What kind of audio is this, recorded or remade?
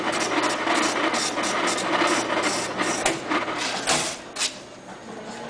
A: recorded